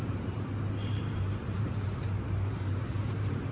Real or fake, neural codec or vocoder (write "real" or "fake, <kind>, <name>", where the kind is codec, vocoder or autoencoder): fake, vocoder, BigVGAN v2